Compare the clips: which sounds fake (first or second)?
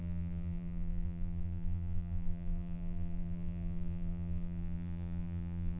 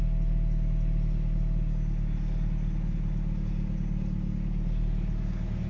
first